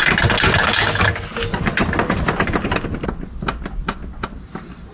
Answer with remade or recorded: recorded